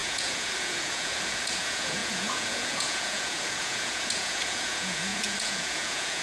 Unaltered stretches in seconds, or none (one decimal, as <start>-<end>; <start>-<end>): none